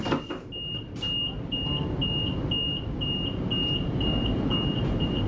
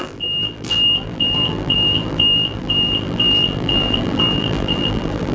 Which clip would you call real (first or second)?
first